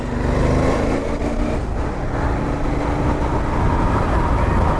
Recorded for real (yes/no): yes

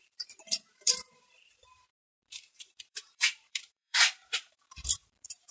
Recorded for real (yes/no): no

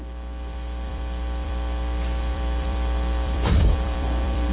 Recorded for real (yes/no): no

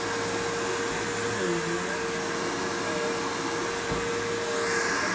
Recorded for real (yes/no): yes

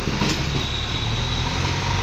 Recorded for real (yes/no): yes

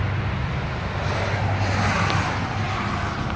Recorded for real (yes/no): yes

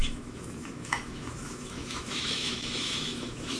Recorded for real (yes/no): no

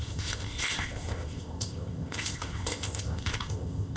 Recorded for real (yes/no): no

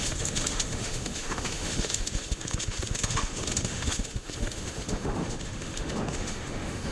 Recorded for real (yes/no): no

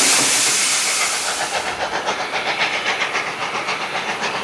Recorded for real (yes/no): yes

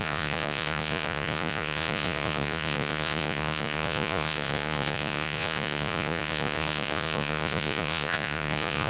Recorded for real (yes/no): no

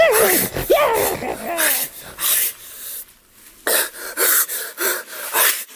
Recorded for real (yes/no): yes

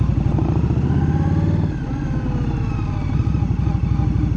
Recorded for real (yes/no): yes